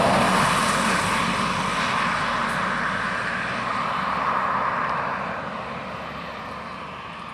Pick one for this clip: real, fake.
real